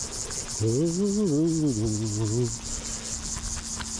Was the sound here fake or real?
real